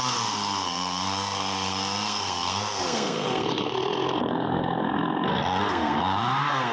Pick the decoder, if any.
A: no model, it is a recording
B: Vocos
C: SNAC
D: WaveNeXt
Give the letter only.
C